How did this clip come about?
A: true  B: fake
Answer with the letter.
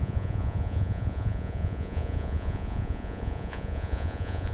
B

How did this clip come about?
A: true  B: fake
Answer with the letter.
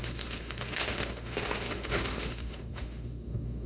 B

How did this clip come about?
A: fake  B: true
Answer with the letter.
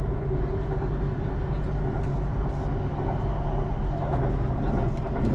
B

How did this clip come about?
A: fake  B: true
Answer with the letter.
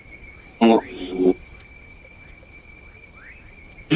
A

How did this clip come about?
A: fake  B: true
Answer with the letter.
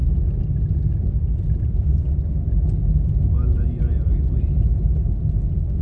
B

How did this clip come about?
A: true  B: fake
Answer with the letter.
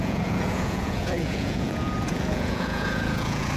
B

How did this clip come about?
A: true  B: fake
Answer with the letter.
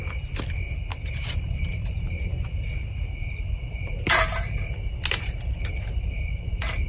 A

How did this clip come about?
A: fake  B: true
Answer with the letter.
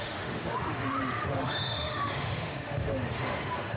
A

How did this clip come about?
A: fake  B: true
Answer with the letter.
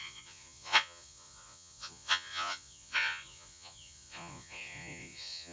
A